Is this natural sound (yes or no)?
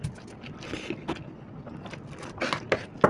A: yes